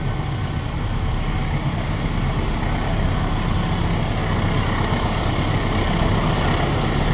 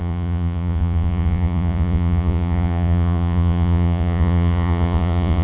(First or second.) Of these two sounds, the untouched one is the first